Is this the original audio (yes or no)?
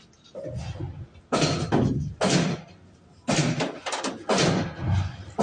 yes